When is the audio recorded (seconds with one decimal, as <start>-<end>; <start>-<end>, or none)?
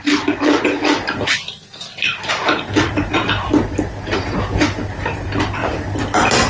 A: 0.0-6.5